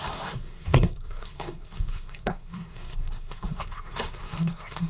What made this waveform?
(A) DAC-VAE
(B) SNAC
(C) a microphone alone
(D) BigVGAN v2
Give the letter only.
B